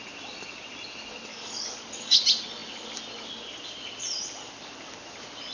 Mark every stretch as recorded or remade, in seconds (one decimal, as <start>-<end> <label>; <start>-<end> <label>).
0.0-1.3 recorded; 1.3-2.2 remade; 2.2-5.5 recorded